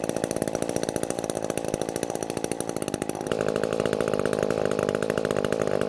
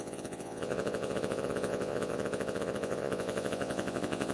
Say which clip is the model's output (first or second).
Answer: second